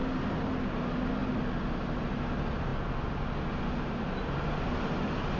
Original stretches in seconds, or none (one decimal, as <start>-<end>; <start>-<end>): 0.0-5.4

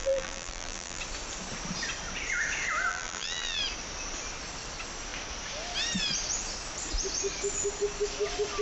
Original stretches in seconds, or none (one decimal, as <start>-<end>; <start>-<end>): 1.0-2.9; 3.6-8.6

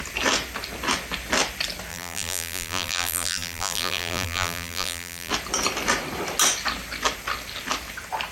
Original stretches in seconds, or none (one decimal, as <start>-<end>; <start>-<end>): 0.0-1.9; 5.3-8.3

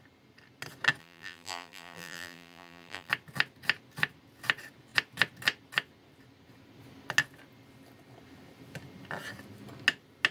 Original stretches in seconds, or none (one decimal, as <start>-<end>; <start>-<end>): 0.0-1.0; 3.1-10.3

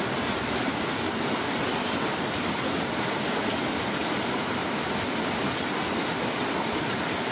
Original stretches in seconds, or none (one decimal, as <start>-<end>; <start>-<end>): 0.0-4.6

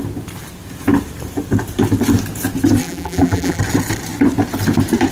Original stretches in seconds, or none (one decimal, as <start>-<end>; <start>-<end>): 0.0-2.8; 3.6-5.1

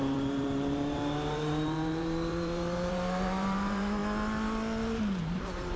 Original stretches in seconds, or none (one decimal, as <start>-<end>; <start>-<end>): 4.0-5.2